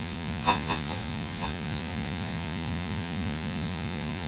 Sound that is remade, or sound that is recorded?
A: remade